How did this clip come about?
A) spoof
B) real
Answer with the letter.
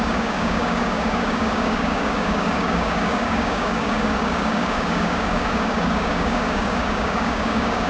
A